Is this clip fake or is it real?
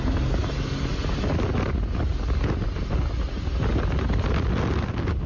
real